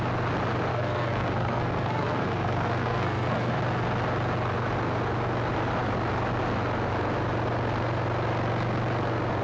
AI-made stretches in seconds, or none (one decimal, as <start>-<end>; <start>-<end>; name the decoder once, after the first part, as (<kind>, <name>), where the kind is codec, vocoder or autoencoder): 0.7-3.5 (codec, SNAC)